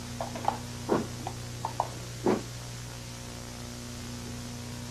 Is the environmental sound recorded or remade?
recorded